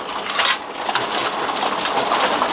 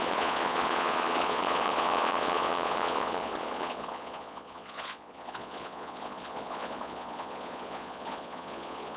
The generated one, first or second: second